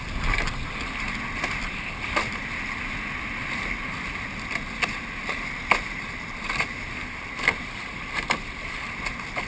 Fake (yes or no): no